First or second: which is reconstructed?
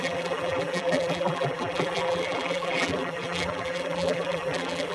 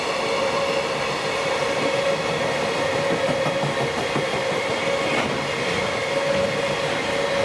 first